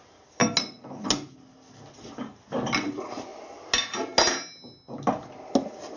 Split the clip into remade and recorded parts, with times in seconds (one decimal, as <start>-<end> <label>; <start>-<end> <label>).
0.0-6.0 recorded